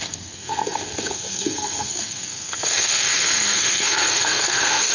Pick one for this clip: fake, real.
fake